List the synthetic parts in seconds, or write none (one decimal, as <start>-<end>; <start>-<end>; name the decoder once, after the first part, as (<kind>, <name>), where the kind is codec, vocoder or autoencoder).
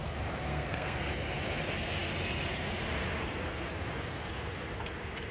0.5-1.0 (codec, SNAC)